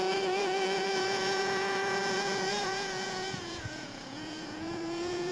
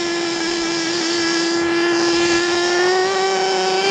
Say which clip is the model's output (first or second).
first